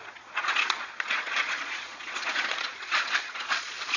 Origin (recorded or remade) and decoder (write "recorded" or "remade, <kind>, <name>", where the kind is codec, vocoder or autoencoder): remade, vocoder, Vocos